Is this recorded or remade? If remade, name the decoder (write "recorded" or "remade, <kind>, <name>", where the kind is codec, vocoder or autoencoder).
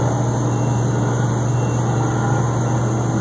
recorded